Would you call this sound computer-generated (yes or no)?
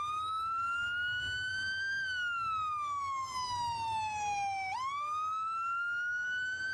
no